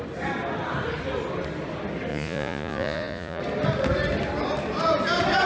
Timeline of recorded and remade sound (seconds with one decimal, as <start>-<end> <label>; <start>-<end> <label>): 0.0-2.1 recorded; 2.1-3.4 remade; 3.4-5.5 recorded